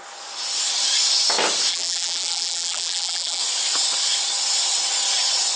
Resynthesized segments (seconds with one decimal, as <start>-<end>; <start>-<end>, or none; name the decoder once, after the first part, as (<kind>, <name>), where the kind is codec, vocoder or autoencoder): 1.7-3.4 (vocoder, BigVGAN v2)